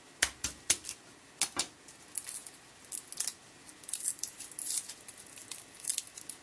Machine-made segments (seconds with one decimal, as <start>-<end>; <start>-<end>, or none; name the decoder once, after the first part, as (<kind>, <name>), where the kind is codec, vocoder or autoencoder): 5.4-5.9 (vocoder, BigVGAN v2)